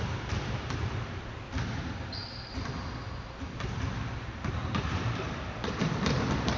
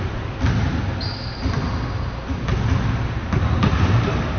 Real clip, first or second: second